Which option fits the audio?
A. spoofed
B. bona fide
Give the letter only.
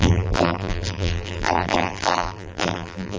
A